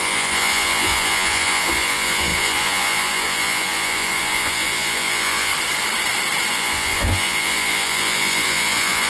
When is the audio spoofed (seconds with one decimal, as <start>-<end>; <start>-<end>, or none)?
0.0-5.5; 6.5-9.1